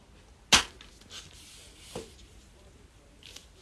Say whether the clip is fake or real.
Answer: real